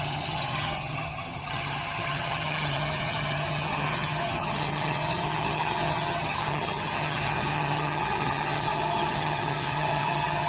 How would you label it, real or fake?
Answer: fake